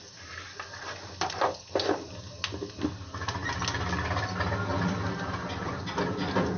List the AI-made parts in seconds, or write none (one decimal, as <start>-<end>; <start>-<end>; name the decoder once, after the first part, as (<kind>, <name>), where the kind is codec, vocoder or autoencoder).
none